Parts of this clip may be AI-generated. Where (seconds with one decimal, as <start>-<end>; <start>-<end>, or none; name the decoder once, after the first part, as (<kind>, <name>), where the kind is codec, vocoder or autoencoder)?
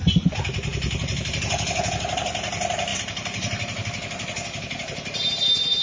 none